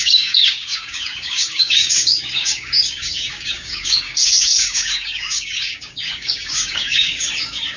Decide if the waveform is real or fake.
fake